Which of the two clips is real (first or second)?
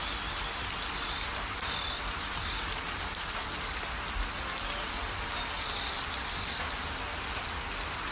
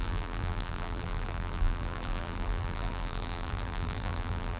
first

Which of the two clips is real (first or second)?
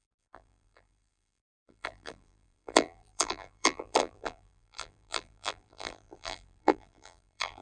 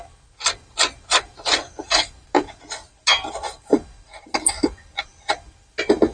second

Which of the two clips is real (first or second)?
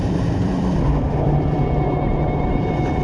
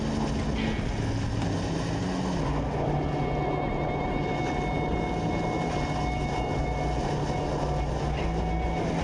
second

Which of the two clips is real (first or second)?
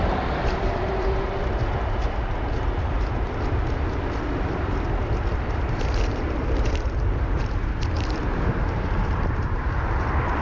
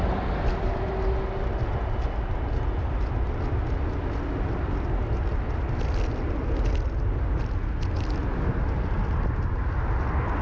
second